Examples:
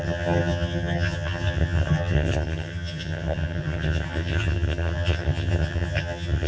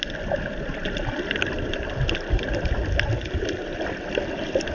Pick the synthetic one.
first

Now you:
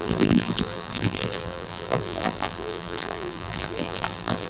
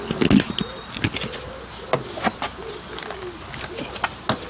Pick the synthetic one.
first